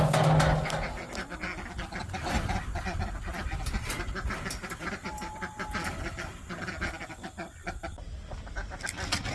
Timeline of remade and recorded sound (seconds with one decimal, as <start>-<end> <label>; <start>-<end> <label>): 0.0-4.6 recorded; 4.6-5.6 remade; 5.6-9.3 recorded